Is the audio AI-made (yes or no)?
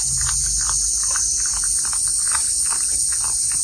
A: no